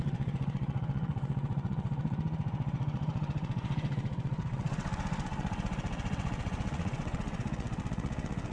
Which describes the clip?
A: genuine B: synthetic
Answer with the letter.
B